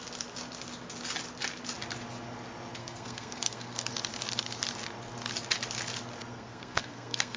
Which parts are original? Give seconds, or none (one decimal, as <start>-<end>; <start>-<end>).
0.0-2.8; 3.9-6.3